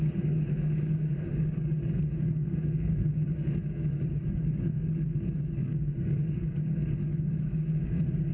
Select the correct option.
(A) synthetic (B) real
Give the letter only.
A